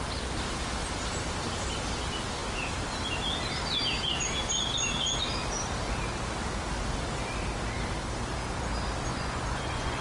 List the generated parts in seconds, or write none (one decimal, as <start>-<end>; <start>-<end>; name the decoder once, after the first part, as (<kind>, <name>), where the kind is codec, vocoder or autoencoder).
9.1-10.0 (vocoder, Vocos)